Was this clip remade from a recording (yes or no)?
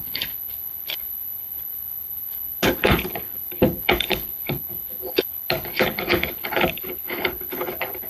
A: yes